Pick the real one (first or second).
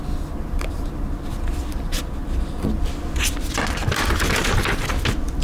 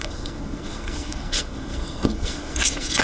first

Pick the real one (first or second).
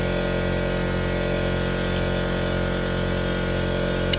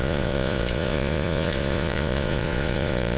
first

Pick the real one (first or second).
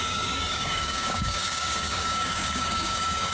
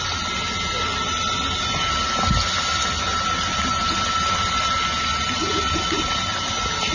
second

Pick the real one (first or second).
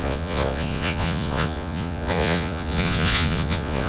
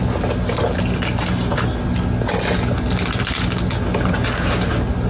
second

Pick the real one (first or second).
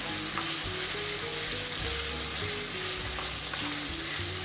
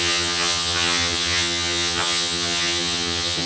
first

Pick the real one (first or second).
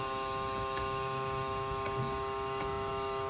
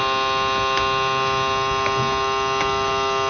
second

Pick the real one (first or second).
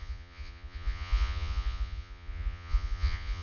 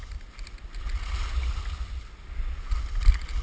second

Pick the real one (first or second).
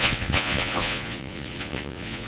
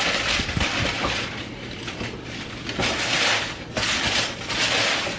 second